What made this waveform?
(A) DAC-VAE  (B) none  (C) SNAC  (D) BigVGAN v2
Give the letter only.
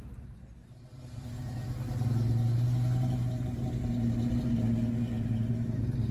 B